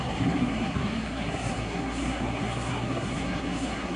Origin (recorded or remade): remade